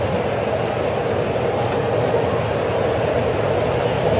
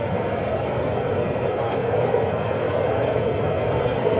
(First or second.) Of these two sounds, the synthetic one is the second